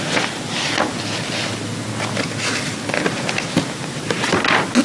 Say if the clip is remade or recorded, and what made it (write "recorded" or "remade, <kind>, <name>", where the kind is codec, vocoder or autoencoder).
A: recorded